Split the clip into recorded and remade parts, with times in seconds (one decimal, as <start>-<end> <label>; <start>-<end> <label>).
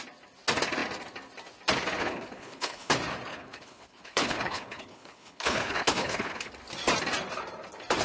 0.0-2.0 recorded; 2.0-2.9 remade; 2.9-3.3 recorded; 3.3-6.5 remade; 6.5-8.0 recorded